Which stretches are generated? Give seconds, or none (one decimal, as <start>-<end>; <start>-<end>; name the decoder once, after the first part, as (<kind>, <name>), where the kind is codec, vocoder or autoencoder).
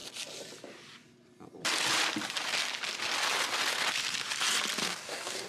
4.8-5.5 (codec, DAC)